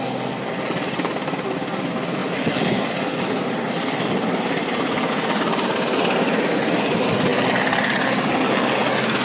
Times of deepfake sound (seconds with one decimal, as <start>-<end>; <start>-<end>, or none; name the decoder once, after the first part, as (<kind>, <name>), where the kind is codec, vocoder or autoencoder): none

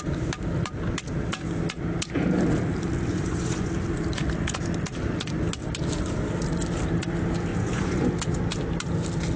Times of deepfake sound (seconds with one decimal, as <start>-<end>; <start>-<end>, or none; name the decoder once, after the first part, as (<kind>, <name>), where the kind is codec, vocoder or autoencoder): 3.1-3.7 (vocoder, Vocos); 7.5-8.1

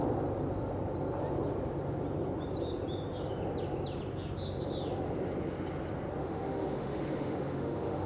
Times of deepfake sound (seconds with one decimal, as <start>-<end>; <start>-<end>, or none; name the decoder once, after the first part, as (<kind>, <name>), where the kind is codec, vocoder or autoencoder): 6.2-8.1 (autoencoder, DAC-VAE)

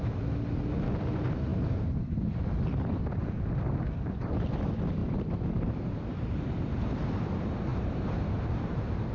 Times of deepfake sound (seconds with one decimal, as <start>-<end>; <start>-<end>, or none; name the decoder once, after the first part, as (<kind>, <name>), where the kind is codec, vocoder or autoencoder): 1.5-2.4 (vocoder, BigVGAN v2); 5.0-7.0; 7.7-8.7

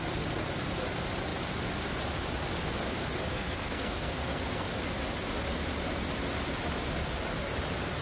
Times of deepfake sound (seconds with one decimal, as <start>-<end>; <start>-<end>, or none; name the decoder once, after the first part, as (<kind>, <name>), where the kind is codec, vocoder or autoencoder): 3.3-4.7 (codec, SNAC)

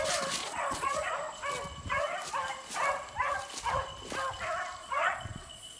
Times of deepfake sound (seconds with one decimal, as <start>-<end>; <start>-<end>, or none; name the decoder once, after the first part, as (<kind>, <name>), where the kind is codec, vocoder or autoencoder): 0.4-1.1 (vocoder, Vocos); 4.8-5.8

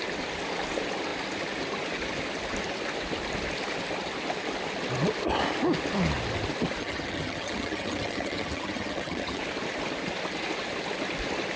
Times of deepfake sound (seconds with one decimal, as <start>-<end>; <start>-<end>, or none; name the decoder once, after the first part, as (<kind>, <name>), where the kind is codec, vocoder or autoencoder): 6.8-9.4 (vocoder, HiFi-GAN)

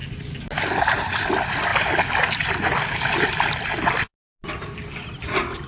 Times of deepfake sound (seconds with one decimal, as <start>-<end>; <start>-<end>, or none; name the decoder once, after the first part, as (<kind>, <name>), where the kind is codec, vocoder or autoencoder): none